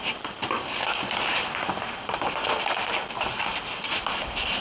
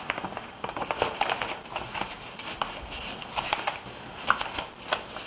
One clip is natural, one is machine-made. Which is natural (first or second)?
second